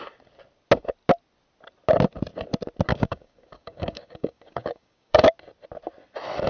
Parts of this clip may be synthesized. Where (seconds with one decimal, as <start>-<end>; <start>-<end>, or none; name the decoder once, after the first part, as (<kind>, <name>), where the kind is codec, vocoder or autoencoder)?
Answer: 2.9-5.3 (codec, DAC)